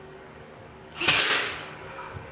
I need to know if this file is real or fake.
fake